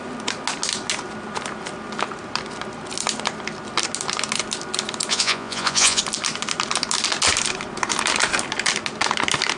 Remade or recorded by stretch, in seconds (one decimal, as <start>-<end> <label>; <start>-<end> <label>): 0.0-5.1 recorded; 5.1-6.0 remade; 6.0-9.6 recorded